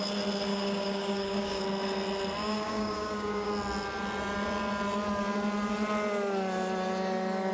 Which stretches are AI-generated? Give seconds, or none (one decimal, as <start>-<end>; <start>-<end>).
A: 0.5-1.6; 2.4-3.5